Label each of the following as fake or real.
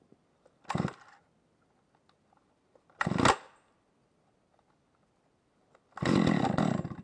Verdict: real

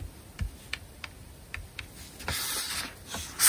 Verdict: real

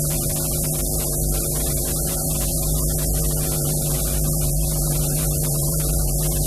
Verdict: fake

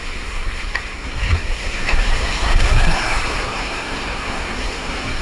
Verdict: fake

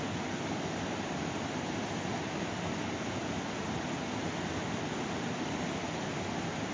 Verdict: real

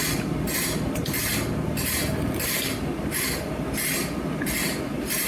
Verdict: real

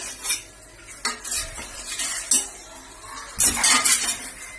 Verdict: real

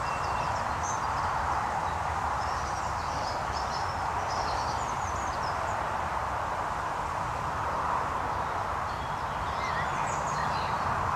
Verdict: fake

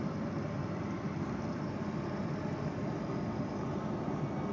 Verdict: real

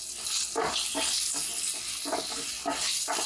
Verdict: real